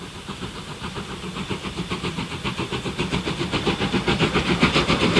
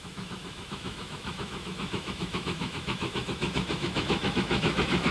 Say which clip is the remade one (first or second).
second